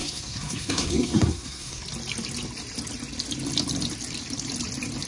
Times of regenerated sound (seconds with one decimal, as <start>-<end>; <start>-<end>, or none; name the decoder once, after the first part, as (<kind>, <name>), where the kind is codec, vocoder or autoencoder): 0.0-1.8 (codec, SNAC)